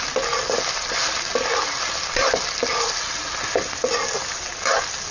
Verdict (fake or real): real